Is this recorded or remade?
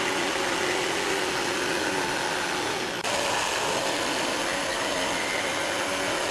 recorded